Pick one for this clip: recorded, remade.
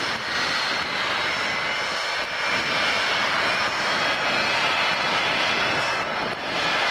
recorded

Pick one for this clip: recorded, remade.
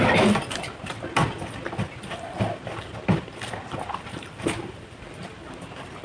recorded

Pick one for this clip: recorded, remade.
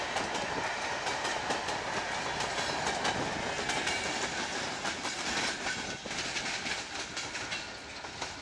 recorded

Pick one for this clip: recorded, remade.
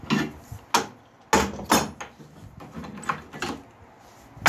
recorded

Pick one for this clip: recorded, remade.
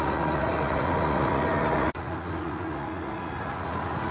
remade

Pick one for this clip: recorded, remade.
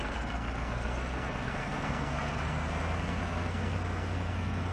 remade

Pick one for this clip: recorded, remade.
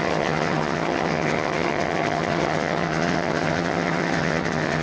remade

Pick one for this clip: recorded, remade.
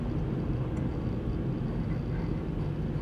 recorded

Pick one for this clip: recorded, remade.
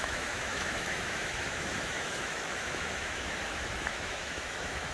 remade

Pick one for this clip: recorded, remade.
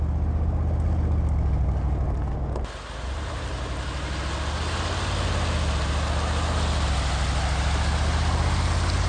recorded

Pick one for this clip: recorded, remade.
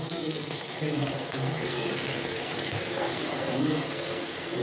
remade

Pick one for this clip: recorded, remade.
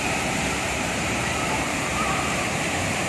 remade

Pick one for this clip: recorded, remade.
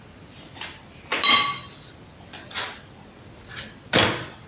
recorded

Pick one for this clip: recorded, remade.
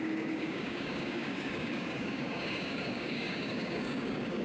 remade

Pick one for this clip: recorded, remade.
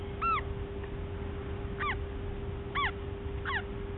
recorded